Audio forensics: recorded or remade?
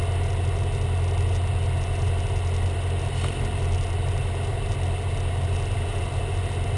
recorded